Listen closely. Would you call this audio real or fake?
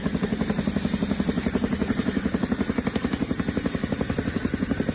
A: fake